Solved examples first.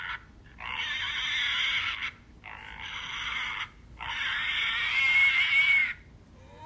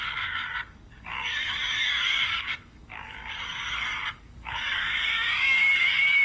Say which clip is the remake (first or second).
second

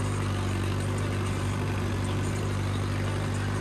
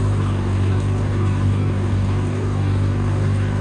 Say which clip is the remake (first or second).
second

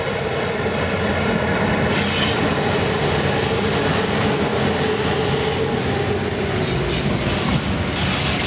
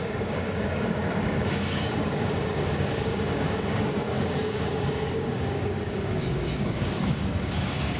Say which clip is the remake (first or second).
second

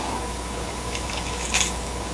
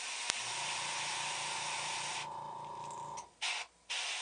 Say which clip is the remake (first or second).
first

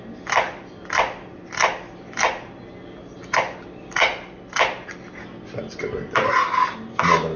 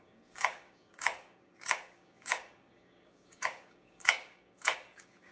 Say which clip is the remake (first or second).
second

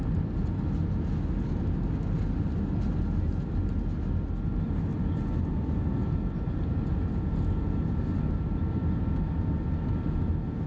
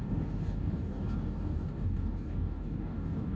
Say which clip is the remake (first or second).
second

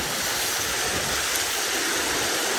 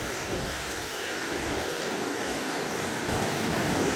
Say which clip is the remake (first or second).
second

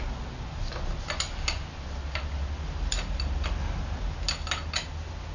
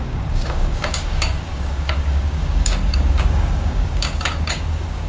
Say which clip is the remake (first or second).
second